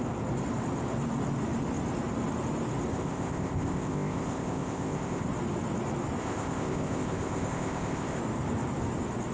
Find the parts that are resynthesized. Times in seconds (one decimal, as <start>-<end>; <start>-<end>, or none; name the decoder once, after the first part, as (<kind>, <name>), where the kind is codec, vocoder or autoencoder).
2.9-5.2 (codec, ZipCodec); 6.2-8.2